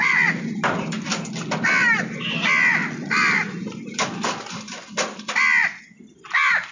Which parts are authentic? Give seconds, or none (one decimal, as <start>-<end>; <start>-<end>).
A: 0.0-6.7